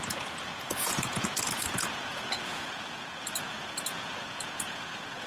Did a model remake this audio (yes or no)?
yes